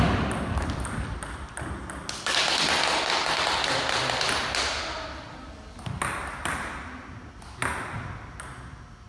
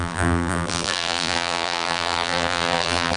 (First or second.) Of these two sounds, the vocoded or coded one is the second